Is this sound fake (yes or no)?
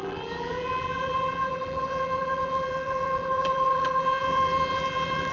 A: yes